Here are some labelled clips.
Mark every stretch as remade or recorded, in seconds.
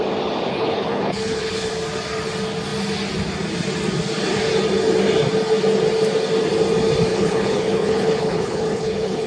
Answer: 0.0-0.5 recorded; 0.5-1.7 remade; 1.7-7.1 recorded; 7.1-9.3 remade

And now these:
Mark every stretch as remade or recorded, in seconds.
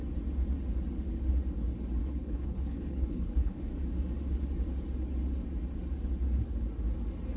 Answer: 0.0-2.0 recorded; 2.0-3.6 remade; 3.6-7.4 recorded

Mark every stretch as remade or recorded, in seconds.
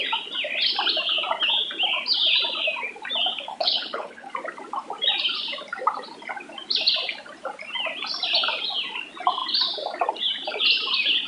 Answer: 0.0-3.5 recorded; 3.5-4.3 remade; 4.3-11.3 recorded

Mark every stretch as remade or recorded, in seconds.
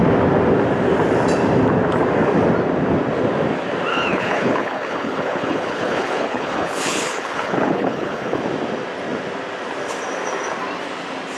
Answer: 0.0-3.9 recorded; 3.9-8.4 remade; 8.4-11.4 recorded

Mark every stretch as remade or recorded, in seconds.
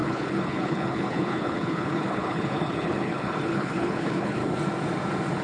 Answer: 0.0-4.4 remade; 4.4-5.4 recorded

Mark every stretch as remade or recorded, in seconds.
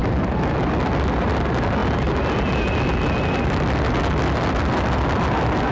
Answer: 0.0-5.7 recorded